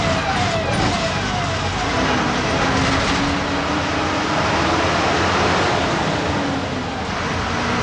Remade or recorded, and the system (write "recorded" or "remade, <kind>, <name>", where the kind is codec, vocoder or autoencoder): recorded